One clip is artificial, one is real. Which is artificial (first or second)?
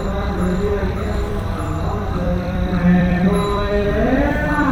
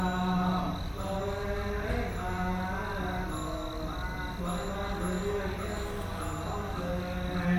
first